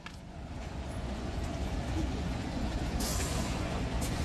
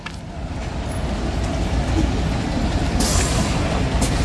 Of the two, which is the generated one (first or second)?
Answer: first